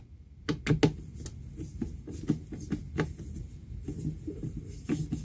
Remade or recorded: recorded